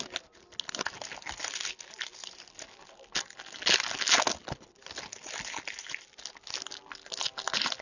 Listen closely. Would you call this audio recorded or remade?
recorded